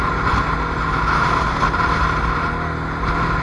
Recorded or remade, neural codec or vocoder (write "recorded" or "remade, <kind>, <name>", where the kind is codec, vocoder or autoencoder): recorded